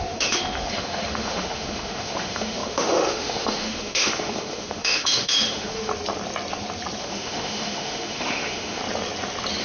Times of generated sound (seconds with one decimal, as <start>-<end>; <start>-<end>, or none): 0.0-5.9; 7.0-8.8